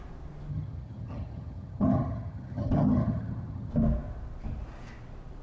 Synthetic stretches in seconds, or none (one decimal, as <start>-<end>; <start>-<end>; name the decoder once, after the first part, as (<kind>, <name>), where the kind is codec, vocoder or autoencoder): 0.5-3.7 (vocoder, HiFi-GAN)

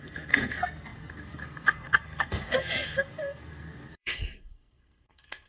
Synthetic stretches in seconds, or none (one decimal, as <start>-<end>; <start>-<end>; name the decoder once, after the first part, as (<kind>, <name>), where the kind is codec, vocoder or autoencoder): 0.0-5.5 (codec, SNAC)

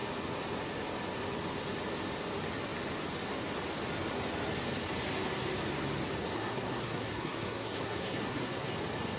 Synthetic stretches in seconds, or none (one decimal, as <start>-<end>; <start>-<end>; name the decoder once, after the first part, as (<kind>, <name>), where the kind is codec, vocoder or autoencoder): 6.2-8.7 (codec, SNAC)

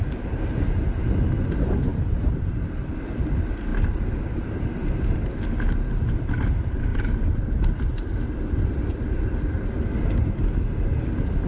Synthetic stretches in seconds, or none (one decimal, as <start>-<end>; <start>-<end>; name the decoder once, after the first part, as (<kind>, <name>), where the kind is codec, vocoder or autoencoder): 1.9-2.5 (vocoder, BigVGAN v2); 3.7-4.6; 6.9-10.3

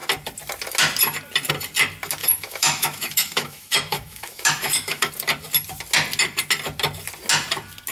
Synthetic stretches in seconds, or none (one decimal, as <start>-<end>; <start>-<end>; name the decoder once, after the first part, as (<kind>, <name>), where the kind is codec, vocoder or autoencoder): 2.2-5.1 (autoencoder, DAC-VAE)

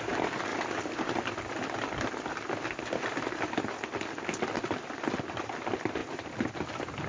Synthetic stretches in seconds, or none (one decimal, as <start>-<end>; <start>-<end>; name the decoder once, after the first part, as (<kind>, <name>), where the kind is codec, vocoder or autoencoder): 0.5-1.3 (vocoder, BigVGAN v2)

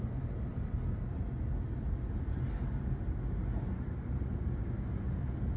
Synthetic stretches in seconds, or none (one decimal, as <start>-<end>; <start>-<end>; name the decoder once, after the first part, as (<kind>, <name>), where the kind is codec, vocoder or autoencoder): none